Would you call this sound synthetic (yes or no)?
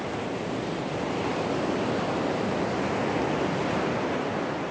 no